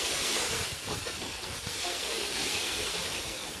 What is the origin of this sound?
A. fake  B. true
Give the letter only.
A